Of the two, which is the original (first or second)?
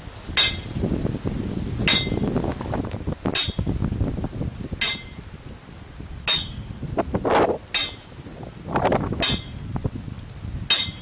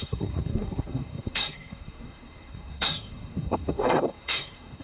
first